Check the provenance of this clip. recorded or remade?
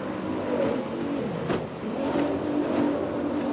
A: recorded